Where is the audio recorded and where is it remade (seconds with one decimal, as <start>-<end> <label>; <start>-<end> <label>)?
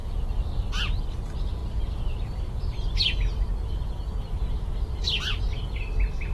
0.0-1.6 recorded; 1.6-5.4 remade; 5.4-6.3 recorded